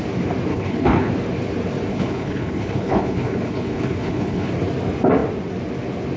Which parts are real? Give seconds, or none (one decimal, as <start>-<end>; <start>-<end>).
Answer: 0.0-0.5; 1.1-1.9; 4.5-6.2